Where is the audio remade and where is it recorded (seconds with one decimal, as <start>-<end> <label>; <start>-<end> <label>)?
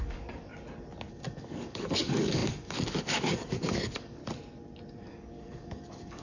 0.0-0.5 remade; 0.5-1.1 recorded; 1.1-4.2 remade; 4.2-5.1 recorded; 5.1-6.2 remade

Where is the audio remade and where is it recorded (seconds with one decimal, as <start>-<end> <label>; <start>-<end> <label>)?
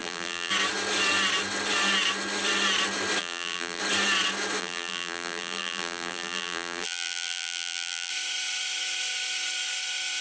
0.0-0.5 remade; 0.5-3.2 recorded; 3.2-3.8 remade; 3.8-4.6 recorded; 4.6-8.1 remade; 8.1-10.2 recorded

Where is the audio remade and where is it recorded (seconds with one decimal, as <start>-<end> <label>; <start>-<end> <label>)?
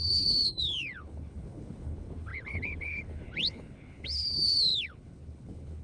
0.0-5.8 remade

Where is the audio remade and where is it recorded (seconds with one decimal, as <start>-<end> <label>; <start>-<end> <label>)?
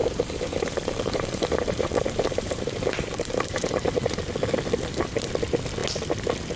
0.0-3.8 remade; 3.8-6.6 recorded